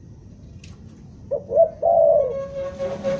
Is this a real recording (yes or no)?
yes